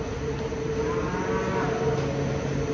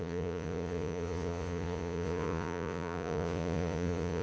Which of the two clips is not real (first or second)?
second